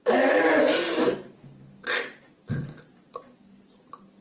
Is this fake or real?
real